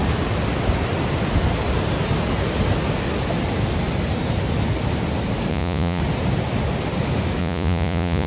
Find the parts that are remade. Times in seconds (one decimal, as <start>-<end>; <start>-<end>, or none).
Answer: 5.5-6.0; 7.4-8.3